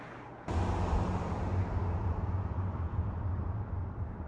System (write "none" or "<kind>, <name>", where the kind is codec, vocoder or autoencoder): vocoder, BigVGAN v2